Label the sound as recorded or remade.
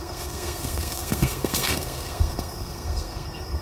remade